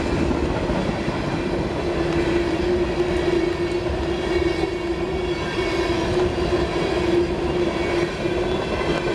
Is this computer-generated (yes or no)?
no